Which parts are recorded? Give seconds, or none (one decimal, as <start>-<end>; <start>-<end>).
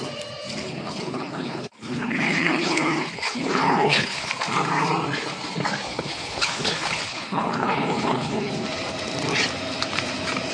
0.0-0.6; 4.3-5.9; 8.5-10.5